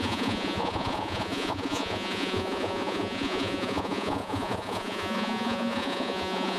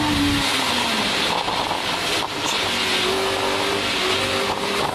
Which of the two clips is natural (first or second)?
second